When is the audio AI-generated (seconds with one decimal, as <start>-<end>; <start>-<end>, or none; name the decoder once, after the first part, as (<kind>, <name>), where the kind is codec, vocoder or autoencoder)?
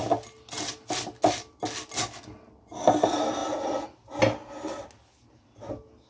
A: none